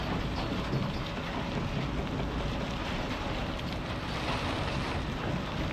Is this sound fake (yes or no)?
no